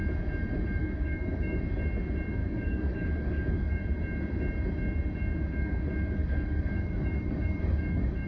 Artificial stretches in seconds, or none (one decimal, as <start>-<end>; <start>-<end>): 0.8-1.6; 2.4-3.8; 6.2-8.3